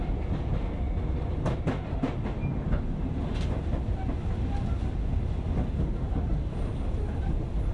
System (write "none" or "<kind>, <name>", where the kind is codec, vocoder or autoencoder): none